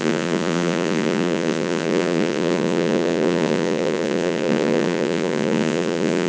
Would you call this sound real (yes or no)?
no